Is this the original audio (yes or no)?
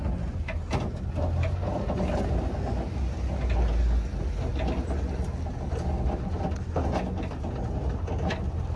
yes